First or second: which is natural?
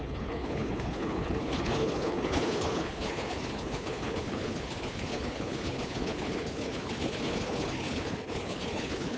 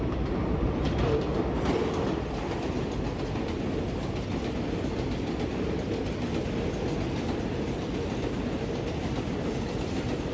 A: second